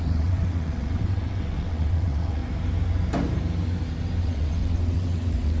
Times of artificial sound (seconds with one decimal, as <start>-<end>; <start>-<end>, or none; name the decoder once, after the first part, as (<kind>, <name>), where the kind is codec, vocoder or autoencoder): 0.0-2.4 (vocoder, WaveNeXt); 4.2-5.6